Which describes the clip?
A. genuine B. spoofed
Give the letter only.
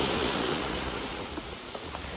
B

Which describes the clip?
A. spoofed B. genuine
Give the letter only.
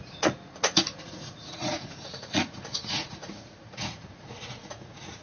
A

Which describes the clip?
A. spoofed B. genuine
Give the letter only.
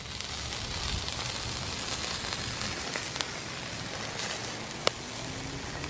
B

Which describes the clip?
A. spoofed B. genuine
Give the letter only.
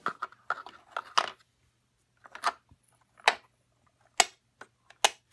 B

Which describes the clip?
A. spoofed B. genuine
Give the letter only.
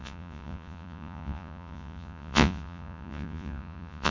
A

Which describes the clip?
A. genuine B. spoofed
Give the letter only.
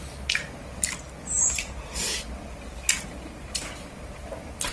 A